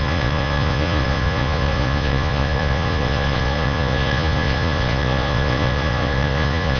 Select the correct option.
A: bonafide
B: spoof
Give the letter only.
B